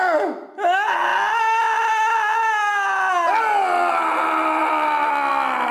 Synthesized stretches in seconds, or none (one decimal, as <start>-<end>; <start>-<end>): none